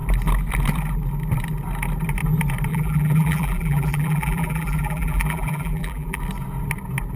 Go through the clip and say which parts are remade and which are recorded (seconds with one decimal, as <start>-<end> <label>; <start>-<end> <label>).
0.0-2.7 recorded; 2.7-6.2 remade; 6.2-7.2 recorded